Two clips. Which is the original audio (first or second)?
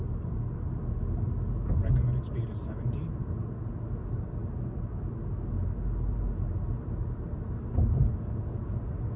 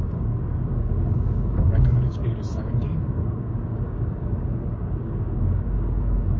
first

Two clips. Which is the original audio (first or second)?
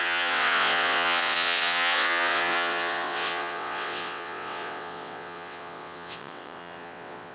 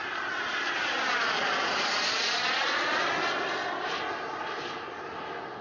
second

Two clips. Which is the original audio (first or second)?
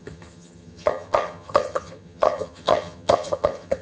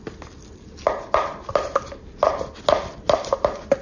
second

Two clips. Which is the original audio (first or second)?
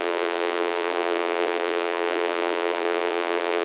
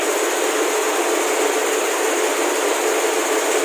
second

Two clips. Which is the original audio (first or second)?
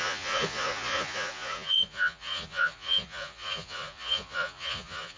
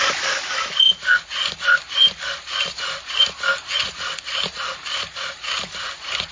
second